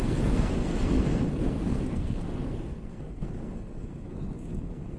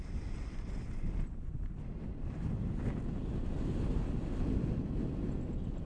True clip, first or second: second